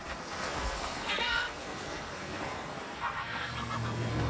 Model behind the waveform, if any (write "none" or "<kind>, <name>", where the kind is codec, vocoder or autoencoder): codec, SNAC